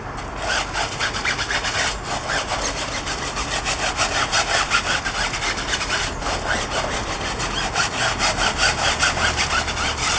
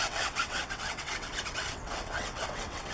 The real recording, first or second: first